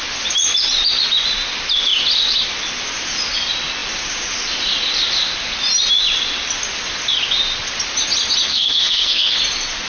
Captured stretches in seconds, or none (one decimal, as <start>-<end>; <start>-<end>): 0.0-8.5; 9.4-9.9